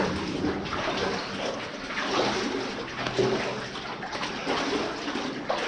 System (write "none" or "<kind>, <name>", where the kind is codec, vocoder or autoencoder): none